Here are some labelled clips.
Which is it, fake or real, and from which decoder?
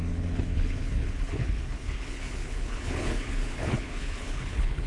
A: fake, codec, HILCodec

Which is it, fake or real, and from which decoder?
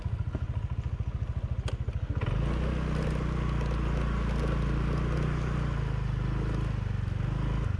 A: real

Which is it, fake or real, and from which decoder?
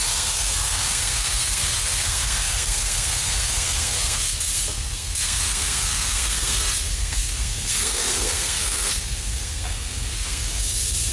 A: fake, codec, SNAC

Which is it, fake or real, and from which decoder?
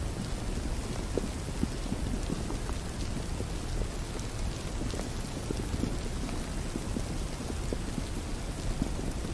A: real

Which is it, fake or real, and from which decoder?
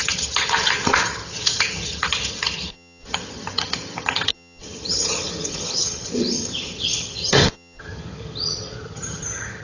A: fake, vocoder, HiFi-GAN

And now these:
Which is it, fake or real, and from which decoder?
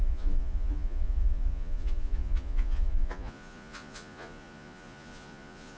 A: fake, vocoder, Vocos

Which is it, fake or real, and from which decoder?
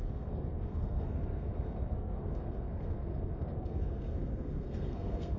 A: fake, codec, SNAC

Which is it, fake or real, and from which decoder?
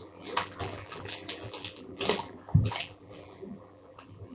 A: fake, vocoder, BigVGAN v2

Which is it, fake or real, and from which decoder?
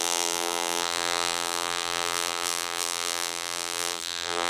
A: fake, vocoder, BigVGAN v2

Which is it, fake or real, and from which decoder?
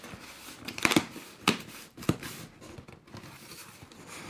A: real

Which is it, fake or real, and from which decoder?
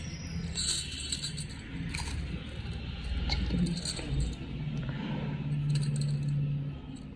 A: real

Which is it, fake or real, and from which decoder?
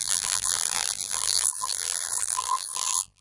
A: fake, vocoder, BigVGAN v2